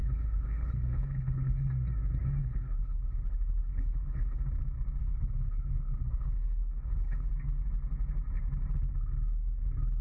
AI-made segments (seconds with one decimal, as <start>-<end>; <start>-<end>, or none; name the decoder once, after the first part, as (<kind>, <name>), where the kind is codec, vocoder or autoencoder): 0.0-1.7 (codec, HILCodec); 2.4-4.4; 5.0-7.3